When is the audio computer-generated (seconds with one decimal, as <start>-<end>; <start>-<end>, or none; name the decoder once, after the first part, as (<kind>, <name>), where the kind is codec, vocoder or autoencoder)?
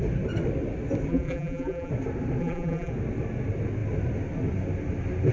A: 1.1-1.9 (vocoder, BigVGAN v2); 2.4-2.9